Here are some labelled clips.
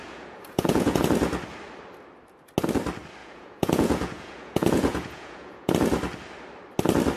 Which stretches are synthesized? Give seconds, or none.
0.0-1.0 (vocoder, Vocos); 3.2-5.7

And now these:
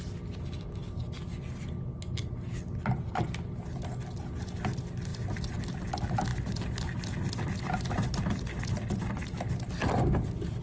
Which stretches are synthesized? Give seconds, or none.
none

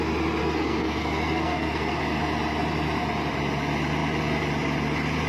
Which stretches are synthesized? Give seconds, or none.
0.4-2.0 (codec, SNAC)

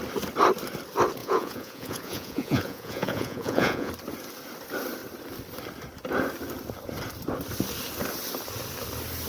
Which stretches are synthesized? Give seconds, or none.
1.2-3.9 (vocoder, Vocos)

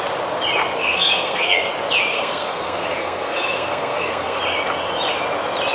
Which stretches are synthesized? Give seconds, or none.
0.8-1.7 (codec, SNAC); 2.1-4.4

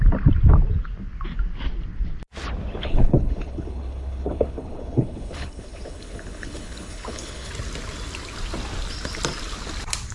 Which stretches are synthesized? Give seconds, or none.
2.8-7.5 (codec, HILCodec)

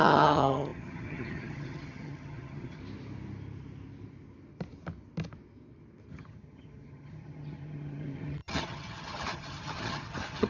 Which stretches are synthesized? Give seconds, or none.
0.0-2.8 (vocoder, HiFi-GAN); 6.1-10.5